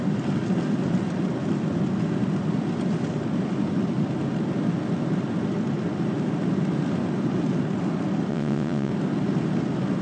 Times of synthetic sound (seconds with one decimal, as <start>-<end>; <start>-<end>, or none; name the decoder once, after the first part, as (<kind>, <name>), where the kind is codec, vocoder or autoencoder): 8.3-8.9 (vocoder, WaveNeXt)